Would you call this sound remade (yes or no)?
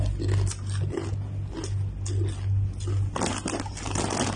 no